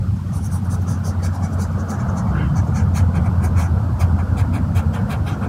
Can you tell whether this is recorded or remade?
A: recorded